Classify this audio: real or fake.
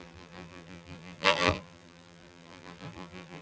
fake